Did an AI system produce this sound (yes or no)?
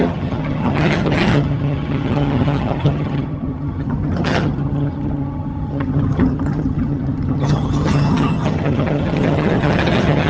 yes